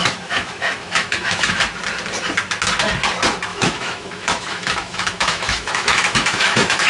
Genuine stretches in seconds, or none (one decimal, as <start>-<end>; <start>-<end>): 1.6-3.5